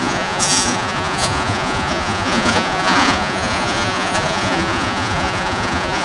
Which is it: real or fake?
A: fake